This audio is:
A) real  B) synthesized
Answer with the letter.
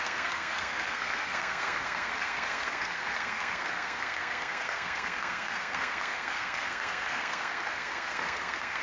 B